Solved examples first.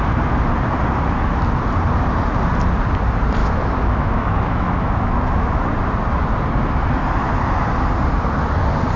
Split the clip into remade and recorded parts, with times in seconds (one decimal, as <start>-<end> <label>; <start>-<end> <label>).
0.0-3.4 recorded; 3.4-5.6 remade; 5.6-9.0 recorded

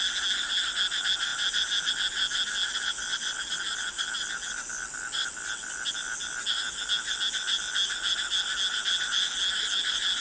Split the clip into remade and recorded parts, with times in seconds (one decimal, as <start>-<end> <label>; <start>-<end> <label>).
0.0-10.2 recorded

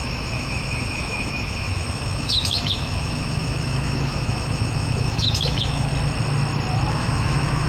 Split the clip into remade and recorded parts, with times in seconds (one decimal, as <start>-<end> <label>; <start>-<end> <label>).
0.0-5.9 remade; 5.9-6.9 recorded; 6.9-7.7 remade

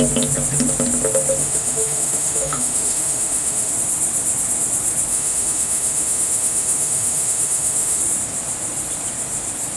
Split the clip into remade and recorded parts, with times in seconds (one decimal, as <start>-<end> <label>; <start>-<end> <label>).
0.0-1.4 recorded; 1.4-3.7 remade; 3.7-5.1 recorded; 5.1-8.0 remade; 8.0-9.8 recorded

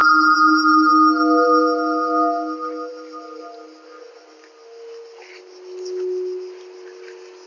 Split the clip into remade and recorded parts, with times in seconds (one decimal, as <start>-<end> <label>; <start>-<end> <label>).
0.0-7.5 recorded

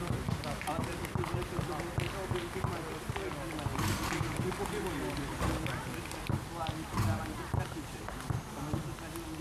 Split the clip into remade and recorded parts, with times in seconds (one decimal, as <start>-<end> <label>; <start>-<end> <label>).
0.0-9.4 recorded

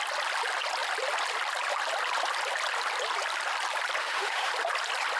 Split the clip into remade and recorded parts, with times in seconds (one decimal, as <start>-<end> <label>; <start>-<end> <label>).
0.0-4.0 recorded; 4.0-4.5 remade; 4.5-5.2 recorded